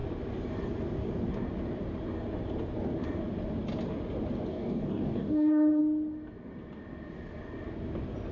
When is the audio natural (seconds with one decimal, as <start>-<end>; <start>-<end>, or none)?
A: 0.0-4.5; 5.8-8.3